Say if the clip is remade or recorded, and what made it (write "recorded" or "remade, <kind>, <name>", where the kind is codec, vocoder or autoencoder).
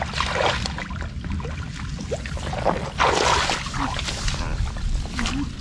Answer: recorded